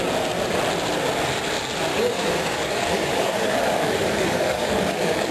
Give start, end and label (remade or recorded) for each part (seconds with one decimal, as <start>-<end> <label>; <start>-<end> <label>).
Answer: 0.0-1.9 recorded; 1.9-5.3 remade